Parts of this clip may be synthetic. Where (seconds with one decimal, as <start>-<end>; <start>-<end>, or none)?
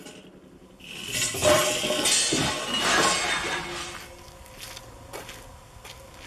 none